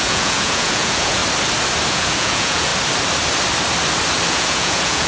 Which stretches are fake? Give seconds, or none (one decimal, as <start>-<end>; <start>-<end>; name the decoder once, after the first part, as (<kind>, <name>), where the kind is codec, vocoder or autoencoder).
0.0-1.2 (vocoder, Vocos); 1.9-2.7; 4.3-5.1